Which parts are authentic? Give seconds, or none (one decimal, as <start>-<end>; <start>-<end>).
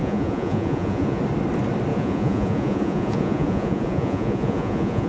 1.2-1.9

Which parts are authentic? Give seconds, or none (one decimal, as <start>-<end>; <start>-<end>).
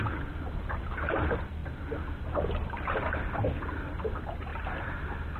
0.0-5.4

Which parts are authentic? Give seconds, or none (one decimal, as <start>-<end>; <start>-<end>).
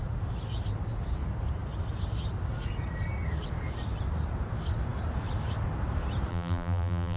0.0-6.3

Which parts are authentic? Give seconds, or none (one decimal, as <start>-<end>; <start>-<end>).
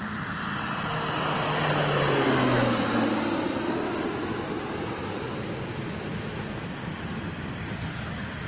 0.0-8.5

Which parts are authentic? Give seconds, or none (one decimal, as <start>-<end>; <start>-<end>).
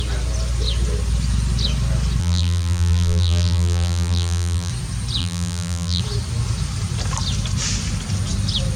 0.0-2.2; 4.7-5.2; 6.0-8.8